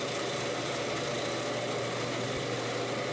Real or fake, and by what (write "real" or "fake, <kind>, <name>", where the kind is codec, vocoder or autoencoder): real